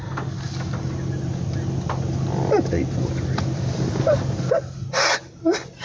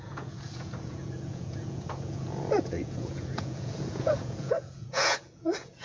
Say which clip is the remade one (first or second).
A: second